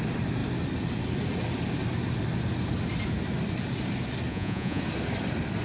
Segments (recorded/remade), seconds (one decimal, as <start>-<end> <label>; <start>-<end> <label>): 0.0-4.3 recorded; 4.3-4.8 remade; 4.8-5.6 recorded